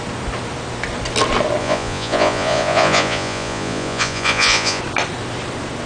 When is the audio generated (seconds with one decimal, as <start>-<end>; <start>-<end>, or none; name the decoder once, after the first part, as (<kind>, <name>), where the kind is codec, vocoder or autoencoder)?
1.6-4.8 (vocoder, Vocos)